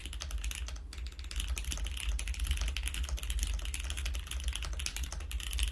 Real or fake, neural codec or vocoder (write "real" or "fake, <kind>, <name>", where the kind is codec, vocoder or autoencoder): real